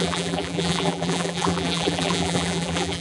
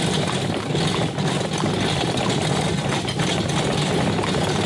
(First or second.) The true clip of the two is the second